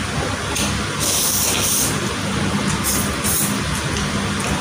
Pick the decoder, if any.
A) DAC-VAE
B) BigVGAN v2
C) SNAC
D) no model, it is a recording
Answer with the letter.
D